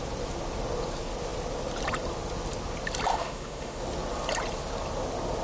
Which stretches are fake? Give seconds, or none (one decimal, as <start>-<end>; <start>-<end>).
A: 3.1-3.8